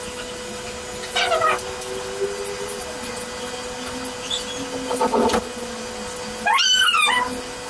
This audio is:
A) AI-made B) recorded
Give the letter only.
B